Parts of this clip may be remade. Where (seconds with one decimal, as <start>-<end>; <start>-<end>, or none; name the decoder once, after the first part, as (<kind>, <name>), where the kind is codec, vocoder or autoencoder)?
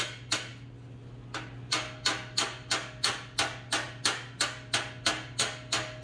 none